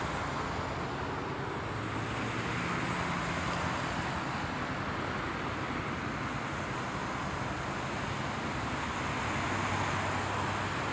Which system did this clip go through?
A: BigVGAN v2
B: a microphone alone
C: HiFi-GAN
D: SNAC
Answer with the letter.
B